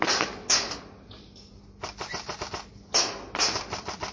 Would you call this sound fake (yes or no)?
no